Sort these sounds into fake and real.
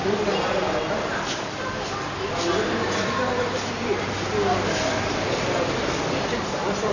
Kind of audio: real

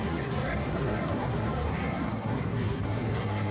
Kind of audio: fake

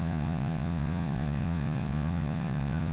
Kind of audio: fake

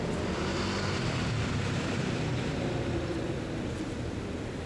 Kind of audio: real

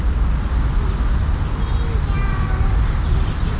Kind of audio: real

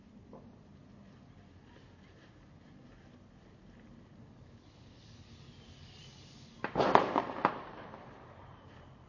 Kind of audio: real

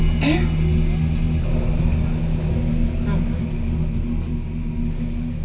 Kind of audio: real